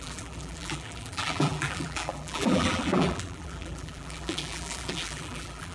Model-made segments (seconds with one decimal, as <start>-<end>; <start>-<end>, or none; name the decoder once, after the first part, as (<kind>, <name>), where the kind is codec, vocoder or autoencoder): 0.0-5.7 (vocoder, BigVGAN v2)